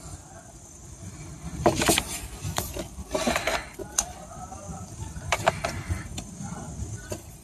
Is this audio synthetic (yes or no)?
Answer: yes